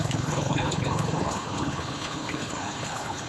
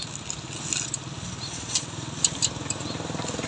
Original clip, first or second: second